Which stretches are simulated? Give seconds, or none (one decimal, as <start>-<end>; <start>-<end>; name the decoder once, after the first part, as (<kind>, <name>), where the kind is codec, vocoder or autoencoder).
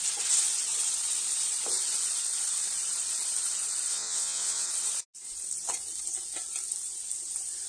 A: 3.9-4.7 (vocoder, WaveNeXt)